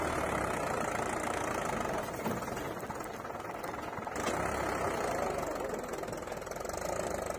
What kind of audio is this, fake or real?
real